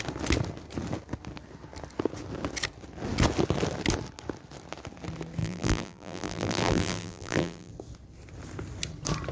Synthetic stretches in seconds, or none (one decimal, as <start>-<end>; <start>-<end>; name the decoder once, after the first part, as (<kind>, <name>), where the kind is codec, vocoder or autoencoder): 5.4-7.7 (vocoder, BigVGAN v2)

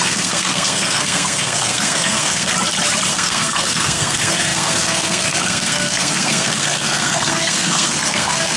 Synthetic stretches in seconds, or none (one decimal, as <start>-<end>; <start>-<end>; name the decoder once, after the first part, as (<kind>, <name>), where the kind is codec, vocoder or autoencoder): 0.0-2.5 (codec, SNAC); 3.1-8.6